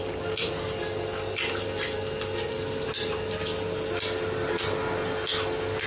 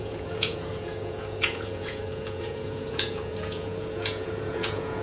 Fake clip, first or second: second